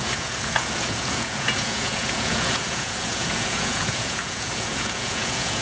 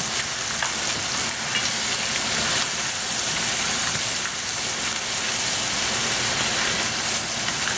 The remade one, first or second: first